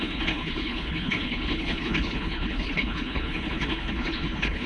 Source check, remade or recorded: remade